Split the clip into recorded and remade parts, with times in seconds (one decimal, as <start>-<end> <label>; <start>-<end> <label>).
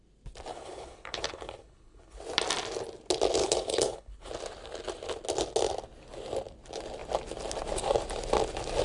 0.0-0.5 recorded; 0.5-2.2 remade; 2.2-3.4 recorded; 3.4-4.3 remade; 4.3-8.8 recorded